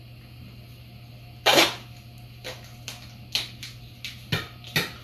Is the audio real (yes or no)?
yes